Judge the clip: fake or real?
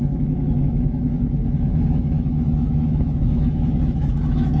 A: fake